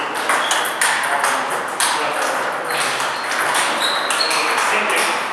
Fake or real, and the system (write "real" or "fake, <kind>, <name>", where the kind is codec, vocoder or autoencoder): real